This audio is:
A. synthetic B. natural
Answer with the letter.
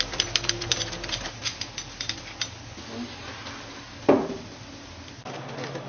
B